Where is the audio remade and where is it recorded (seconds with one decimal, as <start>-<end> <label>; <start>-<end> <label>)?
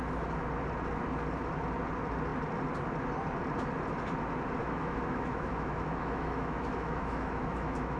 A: 0.0-4.6 recorded; 4.6-8.0 remade